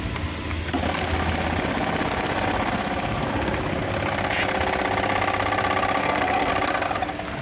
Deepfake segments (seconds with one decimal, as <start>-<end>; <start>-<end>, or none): 6.0-6.5